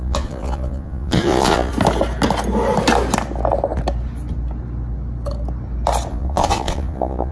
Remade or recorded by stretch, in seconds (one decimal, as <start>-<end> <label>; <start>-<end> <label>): 0.0-1.7 remade; 1.7-6.1 recorded; 6.1-7.3 remade